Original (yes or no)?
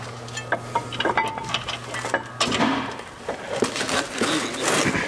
yes